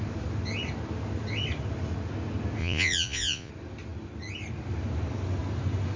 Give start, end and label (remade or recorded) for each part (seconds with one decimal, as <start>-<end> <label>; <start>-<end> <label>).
0.0-2.6 recorded; 2.6-3.5 remade; 3.5-6.0 recorded